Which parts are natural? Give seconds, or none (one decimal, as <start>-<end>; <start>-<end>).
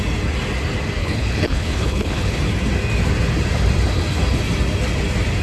0.0-1.0; 2.4-5.4